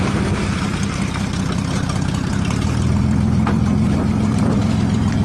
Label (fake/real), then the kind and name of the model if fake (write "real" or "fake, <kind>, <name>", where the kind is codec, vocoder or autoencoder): fake, vocoder, BigVGAN v2